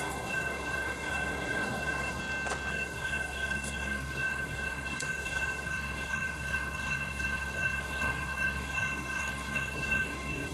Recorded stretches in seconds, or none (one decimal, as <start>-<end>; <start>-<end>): 2.2-2.7